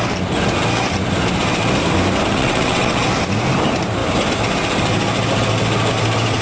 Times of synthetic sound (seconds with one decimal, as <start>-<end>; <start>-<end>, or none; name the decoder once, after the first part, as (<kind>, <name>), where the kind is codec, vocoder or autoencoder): 2.3-3.0 (vocoder, WaveNeXt)